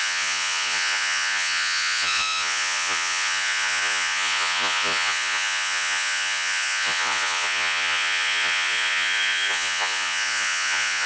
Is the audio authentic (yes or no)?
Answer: no